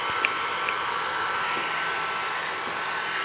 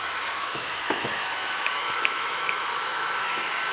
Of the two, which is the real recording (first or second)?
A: first